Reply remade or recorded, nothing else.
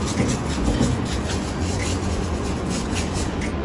remade